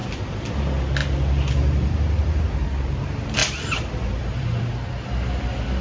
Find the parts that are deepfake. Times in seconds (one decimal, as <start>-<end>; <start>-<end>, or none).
0.0-0.5; 1.0-2.5; 3.4-4.6